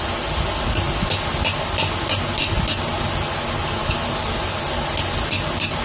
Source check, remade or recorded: recorded